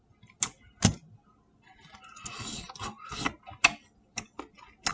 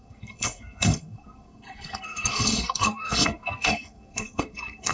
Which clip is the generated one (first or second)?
second